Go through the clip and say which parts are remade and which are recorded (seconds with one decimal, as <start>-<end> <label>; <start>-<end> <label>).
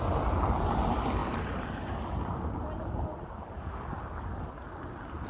0.0-5.3 recorded